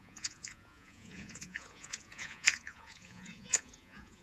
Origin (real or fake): fake